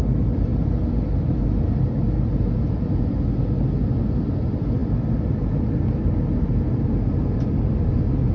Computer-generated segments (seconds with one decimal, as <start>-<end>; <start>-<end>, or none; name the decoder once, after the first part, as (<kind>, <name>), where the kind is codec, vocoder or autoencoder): none